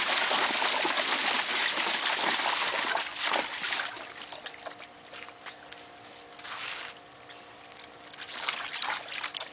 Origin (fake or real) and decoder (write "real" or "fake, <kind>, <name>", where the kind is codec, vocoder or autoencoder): real